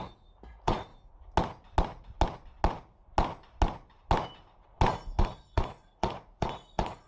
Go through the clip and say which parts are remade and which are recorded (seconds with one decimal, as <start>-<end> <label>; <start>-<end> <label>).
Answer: 0.0-0.9 remade; 0.9-5.2 recorded; 5.2-7.1 remade